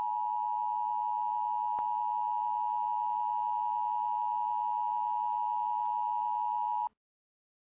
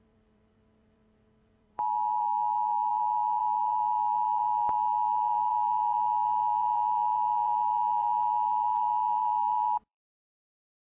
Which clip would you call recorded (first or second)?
first